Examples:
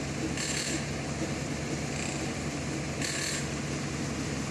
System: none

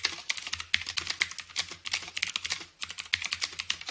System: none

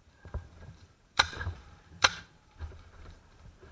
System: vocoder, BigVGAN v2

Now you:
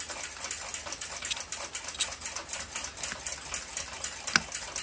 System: none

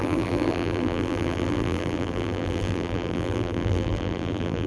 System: vocoder, BigVGAN v2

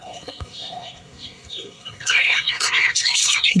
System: codec, SNAC